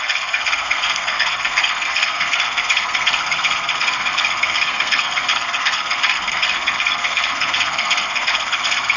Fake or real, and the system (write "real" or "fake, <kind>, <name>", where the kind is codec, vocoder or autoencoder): fake, codec, SNAC